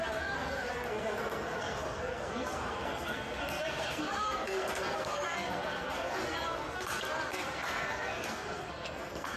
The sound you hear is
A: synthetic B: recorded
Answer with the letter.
A